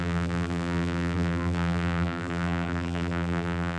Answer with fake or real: fake